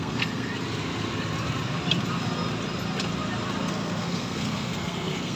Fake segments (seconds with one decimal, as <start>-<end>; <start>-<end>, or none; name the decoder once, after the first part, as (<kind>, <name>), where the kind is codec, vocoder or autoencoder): 0.0-0.5 (codec, SNAC); 3.7-5.4